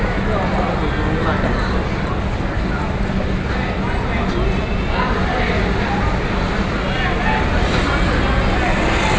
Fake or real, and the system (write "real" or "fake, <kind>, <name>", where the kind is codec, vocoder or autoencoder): real